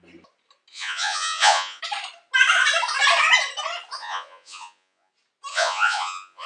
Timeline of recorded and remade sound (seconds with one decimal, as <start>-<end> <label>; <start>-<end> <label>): 0.0-0.7 recorded; 0.7-1.8 remade; 1.8-4.0 recorded; 4.0-5.1 remade; 5.1-5.5 recorded; 5.5-6.5 remade